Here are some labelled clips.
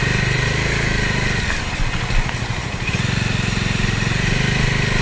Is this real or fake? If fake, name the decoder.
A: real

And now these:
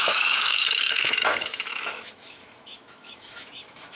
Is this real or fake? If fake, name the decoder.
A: fake, autoencoder, DAC-VAE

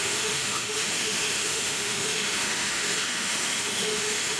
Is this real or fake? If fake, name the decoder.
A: fake, autoencoder, DAC-VAE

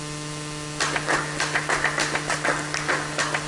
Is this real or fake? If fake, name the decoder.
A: real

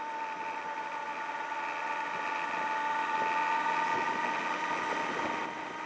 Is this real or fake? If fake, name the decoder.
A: real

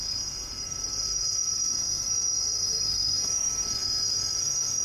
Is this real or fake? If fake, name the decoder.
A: fake, codec, SNAC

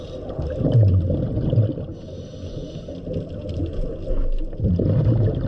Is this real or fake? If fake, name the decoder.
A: real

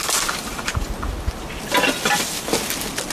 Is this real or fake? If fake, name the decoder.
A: real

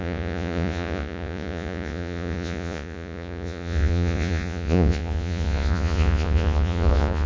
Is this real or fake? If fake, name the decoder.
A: fake, vocoder, Vocos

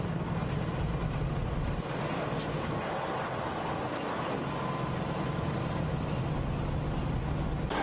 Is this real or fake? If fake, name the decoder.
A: real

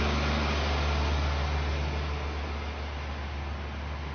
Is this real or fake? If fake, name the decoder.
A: real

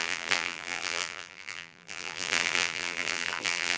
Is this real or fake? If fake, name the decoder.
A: fake, vocoder, BigVGAN v2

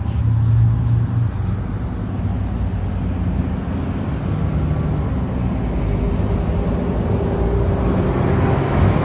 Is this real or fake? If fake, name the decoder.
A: real